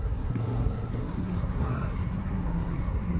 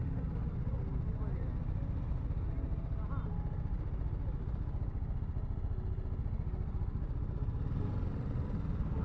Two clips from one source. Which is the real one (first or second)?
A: second